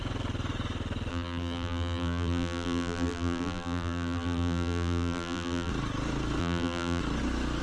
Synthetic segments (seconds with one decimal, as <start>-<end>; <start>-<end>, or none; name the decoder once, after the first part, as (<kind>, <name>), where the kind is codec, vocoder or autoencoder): 1.1-5.7 (vocoder, BigVGAN v2); 6.4-7.0